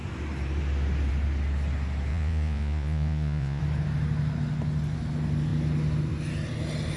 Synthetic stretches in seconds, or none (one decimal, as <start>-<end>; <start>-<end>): 2.1-3.6